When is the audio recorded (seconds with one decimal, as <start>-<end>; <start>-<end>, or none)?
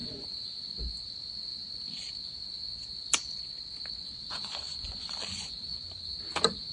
0.9-4.3; 5.8-6.7